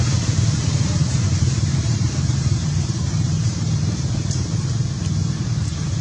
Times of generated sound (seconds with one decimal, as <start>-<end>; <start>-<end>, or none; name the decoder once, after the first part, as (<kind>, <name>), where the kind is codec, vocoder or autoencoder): 1.0-4.5 (vocoder, BigVGAN v2)